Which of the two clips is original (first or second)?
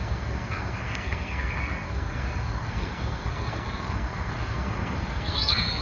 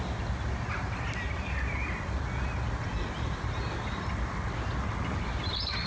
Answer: second